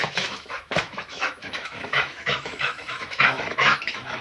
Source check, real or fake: fake